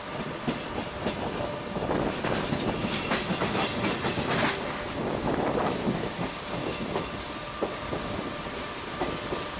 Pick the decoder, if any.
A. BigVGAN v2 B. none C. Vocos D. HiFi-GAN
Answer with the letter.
B